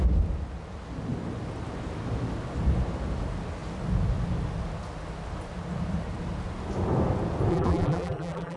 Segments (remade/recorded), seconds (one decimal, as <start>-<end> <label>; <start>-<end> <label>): 0.0-7.5 recorded; 7.5-8.6 remade

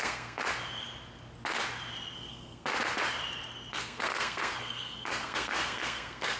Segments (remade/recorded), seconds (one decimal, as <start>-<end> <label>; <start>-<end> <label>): 0.0-0.4 remade; 0.4-2.3 recorded; 2.3-2.7 remade; 2.7-3.7 recorded; 3.7-6.4 remade